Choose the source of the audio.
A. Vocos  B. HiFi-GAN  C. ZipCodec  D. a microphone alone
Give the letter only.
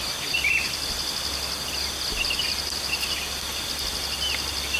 D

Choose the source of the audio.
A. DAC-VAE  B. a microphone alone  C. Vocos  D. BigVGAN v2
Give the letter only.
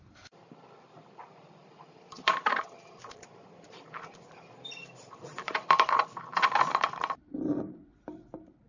D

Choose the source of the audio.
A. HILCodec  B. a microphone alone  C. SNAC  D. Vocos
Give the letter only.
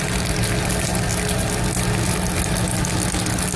B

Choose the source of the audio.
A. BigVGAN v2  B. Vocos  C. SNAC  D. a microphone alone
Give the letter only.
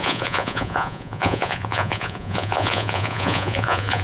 B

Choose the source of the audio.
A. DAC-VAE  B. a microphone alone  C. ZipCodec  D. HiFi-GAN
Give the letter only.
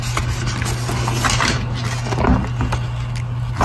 B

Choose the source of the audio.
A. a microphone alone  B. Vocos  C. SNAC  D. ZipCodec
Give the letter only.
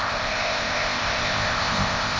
D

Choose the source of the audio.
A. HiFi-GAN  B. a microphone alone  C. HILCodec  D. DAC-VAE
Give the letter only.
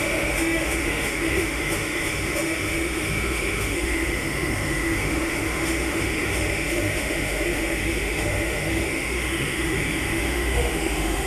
D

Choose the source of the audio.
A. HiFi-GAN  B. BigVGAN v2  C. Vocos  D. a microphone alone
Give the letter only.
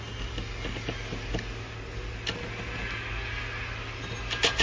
D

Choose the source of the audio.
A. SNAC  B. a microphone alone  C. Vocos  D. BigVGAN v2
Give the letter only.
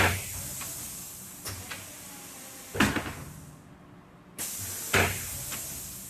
B